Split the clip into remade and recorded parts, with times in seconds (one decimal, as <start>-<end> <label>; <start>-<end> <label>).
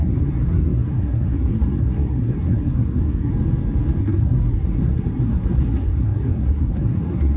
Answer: 0.0-3.3 remade; 3.3-4.0 recorded; 4.0-7.4 remade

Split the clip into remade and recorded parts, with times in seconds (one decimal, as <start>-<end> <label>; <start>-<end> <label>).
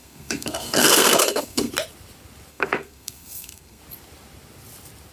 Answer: 0.0-1.7 remade; 1.7-2.5 recorded; 2.5-3.8 remade; 3.8-5.1 recorded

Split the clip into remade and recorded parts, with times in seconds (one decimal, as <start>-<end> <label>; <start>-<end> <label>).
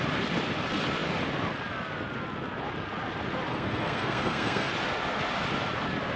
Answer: 0.0-3.5 recorded; 3.5-4.7 remade; 4.7-6.2 recorded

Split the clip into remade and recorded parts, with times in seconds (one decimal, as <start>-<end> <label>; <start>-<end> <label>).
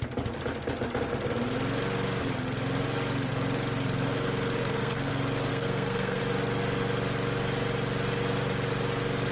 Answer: 0.0-4.6 recorded; 4.6-5.1 remade; 5.1-5.5 recorded; 5.5-6.2 remade; 6.2-9.3 recorded